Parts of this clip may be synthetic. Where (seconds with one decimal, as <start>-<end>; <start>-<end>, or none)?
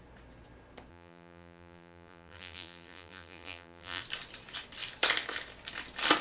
0.9-4.0